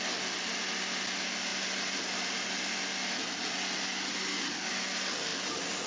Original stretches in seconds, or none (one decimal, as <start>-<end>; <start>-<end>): 0.0-5.9